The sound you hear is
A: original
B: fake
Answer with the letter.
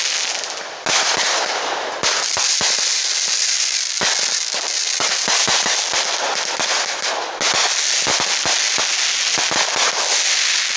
A